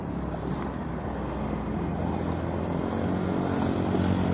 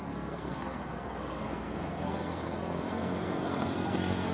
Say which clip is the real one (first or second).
first